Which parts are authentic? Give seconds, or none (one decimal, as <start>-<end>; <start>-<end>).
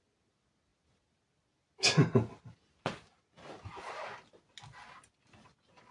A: 0.0-5.9